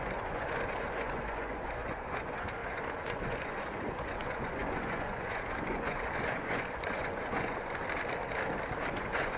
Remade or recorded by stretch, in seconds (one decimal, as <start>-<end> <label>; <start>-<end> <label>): 0.0-7.8 remade; 7.8-8.9 recorded; 8.9-9.4 remade